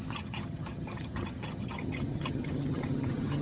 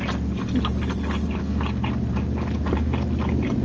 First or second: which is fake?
first